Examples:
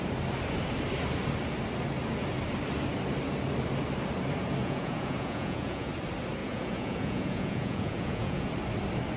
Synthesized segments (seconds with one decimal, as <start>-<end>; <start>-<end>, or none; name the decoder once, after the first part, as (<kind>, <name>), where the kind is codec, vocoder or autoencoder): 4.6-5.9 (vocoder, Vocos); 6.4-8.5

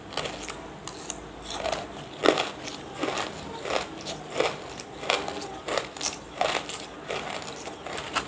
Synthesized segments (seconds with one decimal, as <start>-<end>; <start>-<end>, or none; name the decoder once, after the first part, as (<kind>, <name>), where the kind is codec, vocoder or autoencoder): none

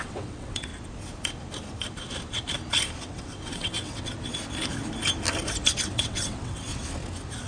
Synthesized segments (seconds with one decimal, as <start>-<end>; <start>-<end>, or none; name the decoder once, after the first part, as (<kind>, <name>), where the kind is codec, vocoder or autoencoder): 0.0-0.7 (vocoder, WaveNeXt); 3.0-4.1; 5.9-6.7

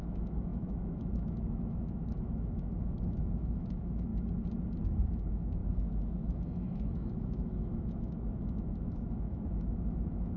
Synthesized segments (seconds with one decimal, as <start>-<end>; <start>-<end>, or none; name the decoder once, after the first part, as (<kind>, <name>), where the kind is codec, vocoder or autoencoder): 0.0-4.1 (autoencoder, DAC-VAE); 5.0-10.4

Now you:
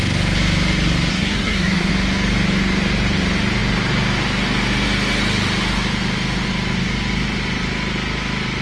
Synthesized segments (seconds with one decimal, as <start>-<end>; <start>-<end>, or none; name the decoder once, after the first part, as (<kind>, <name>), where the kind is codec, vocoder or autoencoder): 1.1-1.9 (codec, SNAC)

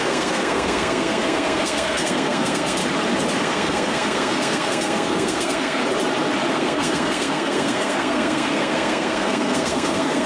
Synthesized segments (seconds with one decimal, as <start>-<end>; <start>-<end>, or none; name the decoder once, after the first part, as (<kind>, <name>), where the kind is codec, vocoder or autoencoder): 0.0-2.8 (codec, SNAC); 3.4-5.8; 6.5-10.3